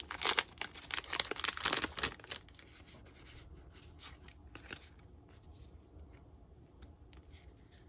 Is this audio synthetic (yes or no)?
no